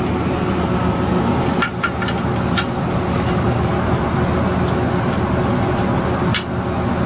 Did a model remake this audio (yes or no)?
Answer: no